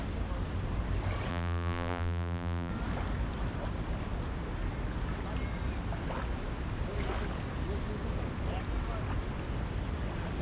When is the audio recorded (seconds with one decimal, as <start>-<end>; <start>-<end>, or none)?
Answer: 0.0-1.3; 2.7-10.4